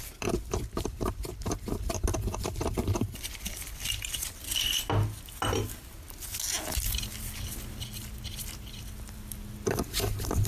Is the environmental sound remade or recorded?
recorded